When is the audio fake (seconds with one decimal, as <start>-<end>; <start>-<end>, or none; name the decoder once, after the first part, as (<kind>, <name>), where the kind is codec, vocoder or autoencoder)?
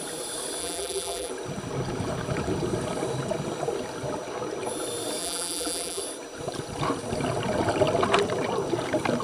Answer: 0.6-1.3 (vocoder, BigVGAN v2); 5.2-6.0